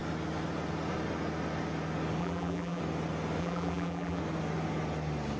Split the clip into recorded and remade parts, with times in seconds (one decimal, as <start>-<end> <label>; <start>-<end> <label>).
0.0-2.2 recorded; 2.2-2.8 remade; 2.8-3.4 recorded; 3.4-4.2 remade; 4.2-5.4 recorded